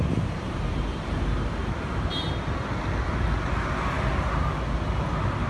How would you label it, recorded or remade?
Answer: recorded